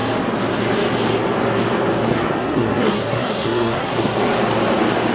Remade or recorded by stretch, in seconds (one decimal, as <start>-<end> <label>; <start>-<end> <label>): 0.0-2.1 recorded; 2.1-4.2 remade; 4.2-5.1 recorded